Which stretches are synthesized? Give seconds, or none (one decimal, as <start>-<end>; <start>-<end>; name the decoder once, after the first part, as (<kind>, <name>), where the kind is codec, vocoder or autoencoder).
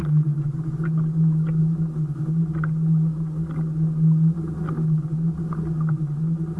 none